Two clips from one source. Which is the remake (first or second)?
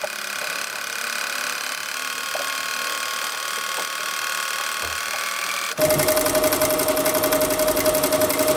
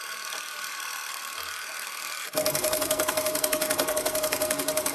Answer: second